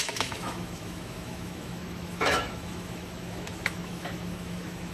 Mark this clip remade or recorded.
remade